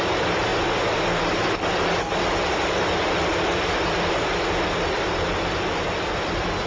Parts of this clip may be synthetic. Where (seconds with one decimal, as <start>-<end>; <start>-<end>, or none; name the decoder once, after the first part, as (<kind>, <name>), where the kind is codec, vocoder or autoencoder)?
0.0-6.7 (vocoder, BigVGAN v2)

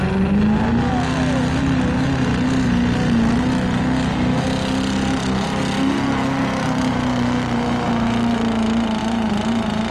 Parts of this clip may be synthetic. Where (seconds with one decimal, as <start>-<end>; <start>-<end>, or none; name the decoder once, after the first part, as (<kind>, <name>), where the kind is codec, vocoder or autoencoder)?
none

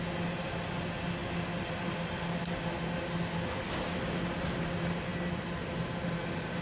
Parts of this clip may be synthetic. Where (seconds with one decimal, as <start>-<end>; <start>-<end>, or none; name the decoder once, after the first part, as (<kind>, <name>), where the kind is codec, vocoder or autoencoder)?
none

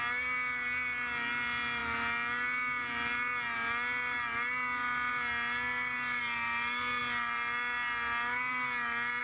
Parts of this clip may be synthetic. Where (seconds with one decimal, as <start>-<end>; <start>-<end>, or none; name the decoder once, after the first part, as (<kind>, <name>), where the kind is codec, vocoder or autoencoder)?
none

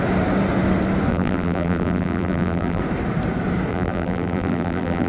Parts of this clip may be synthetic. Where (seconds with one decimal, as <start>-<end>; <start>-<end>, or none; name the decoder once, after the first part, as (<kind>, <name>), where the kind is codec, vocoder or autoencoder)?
1.1-2.8 (vocoder, BigVGAN v2); 3.7-5.1

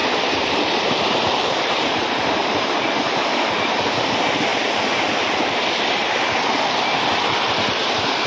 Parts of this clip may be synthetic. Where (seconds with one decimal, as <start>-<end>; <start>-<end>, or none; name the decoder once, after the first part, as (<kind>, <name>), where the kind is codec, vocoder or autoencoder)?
0.0-2.7 (vocoder, BigVGAN v2)

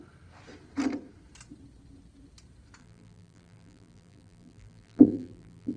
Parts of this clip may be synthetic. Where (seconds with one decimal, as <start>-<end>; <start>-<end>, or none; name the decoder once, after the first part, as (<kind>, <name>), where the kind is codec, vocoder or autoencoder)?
2.8-5.8 (vocoder, BigVGAN v2)

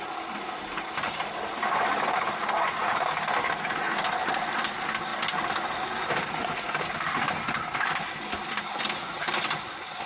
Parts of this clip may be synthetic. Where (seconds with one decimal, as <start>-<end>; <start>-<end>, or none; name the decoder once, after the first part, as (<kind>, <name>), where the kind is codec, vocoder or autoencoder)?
none